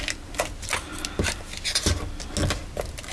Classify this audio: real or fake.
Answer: real